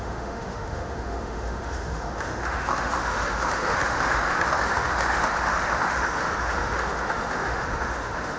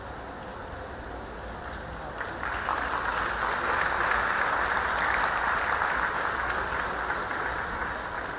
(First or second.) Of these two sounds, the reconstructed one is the first